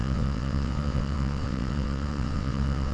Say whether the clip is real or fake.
fake